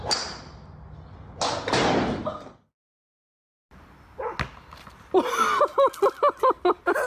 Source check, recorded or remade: recorded